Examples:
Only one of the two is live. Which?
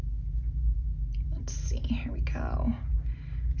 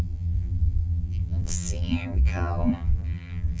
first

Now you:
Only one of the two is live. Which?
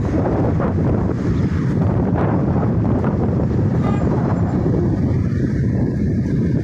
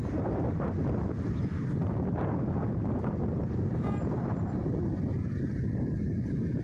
second